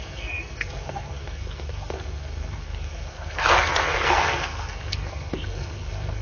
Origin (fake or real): fake